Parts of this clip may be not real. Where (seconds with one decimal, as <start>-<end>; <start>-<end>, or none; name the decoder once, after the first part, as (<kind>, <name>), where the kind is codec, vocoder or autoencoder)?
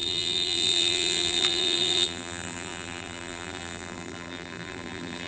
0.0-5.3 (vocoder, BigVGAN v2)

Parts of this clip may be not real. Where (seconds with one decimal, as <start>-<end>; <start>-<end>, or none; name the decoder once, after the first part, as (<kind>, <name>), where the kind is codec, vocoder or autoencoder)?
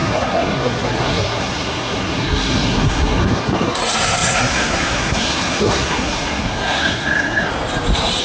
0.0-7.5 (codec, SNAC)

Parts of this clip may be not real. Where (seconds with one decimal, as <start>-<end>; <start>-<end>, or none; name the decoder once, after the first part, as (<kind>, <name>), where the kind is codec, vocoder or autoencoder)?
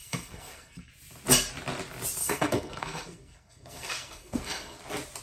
0.0-0.9 (codec, SNAC); 2.2-4.8